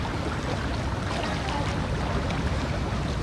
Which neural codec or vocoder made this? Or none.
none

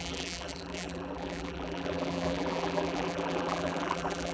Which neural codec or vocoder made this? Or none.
vocoder, BigVGAN v2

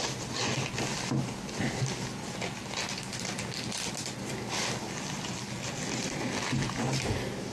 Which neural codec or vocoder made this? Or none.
none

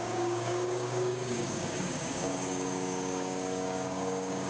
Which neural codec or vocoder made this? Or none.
codec, DAC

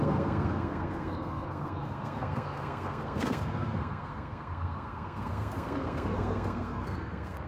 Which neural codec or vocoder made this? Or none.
codec, SNAC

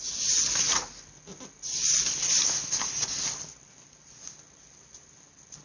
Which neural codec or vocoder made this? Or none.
none